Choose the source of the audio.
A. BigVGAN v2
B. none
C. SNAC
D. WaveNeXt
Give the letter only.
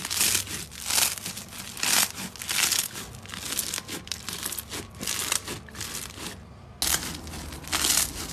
B